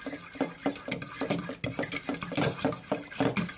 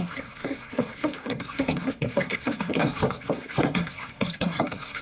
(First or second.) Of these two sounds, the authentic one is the first